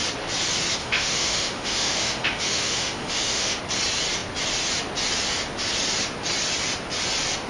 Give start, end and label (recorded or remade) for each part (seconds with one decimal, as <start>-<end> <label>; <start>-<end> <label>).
0.0-0.8 recorded; 0.8-3.6 remade; 3.6-7.5 recorded